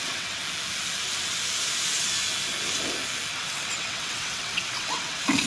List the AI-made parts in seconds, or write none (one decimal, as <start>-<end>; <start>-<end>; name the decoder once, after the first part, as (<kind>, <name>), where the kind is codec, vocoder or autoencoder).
0.0-0.4 (vocoder, WaveNeXt); 3.3-5.5